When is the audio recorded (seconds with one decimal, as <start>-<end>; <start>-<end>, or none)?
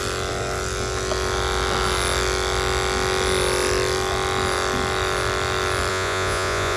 0.0-5.9